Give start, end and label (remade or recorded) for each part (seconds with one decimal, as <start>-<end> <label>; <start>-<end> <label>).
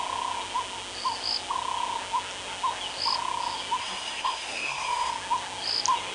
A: 0.0-3.8 recorded; 3.8-5.1 remade; 5.1-6.1 recorded